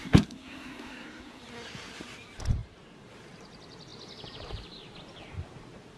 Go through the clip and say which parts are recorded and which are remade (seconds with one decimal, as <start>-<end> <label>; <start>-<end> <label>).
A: 0.0-1.4 remade; 1.4-6.0 recorded